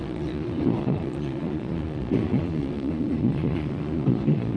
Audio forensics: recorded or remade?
remade